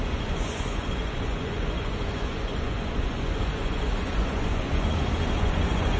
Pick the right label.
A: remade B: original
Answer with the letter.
A